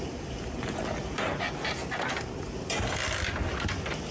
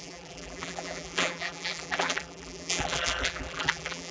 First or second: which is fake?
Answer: second